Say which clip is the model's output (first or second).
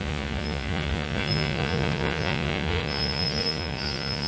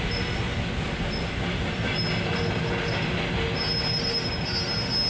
first